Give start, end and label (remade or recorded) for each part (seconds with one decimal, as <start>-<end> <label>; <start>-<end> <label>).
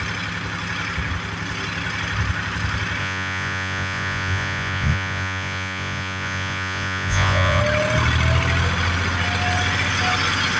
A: 0.0-3.0 recorded; 3.0-7.6 remade; 7.6-10.6 recorded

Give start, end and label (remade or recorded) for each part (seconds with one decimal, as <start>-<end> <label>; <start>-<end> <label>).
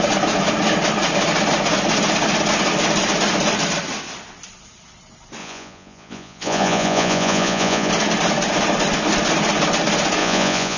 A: 0.0-5.4 recorded; 5.4-7.9 remade; 7.9-10.2 recorded; 10.2-10.8 remade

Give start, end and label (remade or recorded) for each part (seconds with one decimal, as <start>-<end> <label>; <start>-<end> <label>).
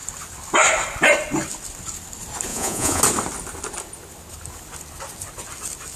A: 0.0-2.5 recorded; 2.5-3.0 remade; 3.0-6.0 recorded